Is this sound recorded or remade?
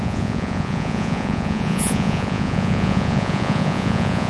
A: remade